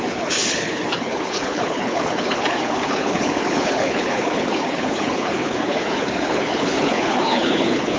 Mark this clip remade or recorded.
remade